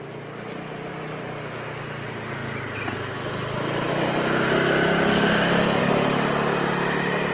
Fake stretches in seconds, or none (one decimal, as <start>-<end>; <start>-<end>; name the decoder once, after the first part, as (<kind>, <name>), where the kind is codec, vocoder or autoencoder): 2.4-5.8 (vocoder, BigVGAN v2)